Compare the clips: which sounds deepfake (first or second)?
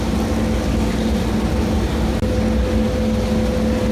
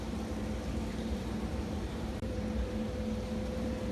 second